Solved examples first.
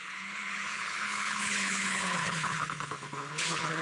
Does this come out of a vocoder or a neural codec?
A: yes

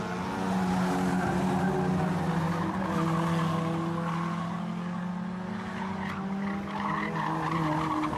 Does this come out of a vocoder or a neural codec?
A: no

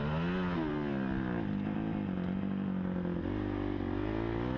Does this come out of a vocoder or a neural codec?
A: no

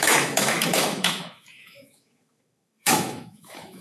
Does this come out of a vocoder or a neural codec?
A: yes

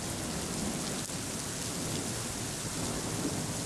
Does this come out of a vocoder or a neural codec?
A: no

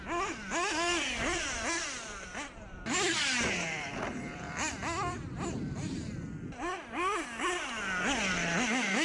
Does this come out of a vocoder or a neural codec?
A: no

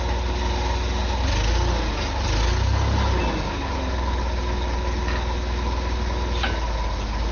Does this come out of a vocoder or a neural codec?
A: no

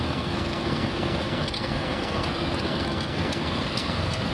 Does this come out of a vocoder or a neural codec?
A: yes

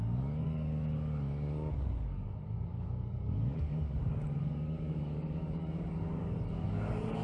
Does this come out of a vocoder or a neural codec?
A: yes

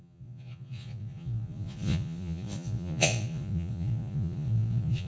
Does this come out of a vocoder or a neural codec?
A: yes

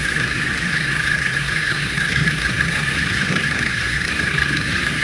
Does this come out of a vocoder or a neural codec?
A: yes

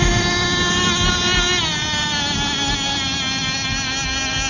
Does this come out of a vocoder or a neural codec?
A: no